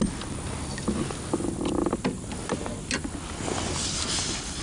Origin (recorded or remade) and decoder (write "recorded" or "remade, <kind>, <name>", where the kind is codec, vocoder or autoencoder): recorded